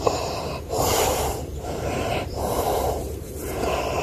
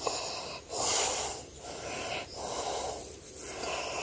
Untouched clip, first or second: second